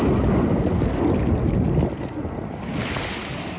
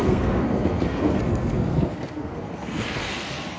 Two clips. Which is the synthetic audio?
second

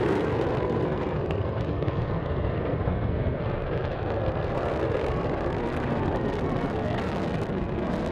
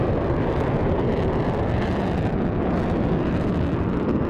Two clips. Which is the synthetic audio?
first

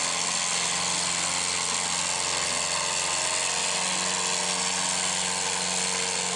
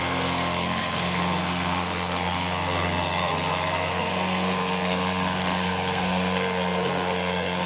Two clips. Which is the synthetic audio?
second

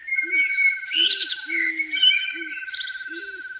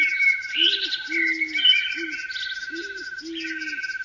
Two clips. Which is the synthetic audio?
first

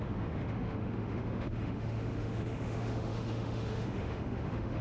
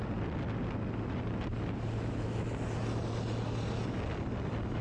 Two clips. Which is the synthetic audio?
first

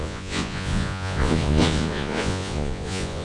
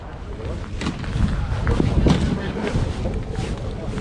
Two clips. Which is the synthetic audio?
first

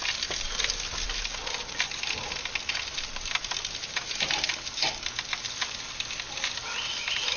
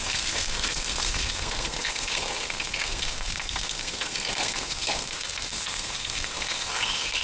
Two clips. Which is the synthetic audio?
second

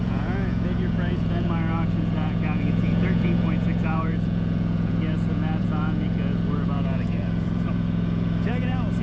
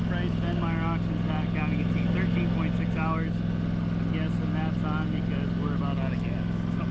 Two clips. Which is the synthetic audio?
first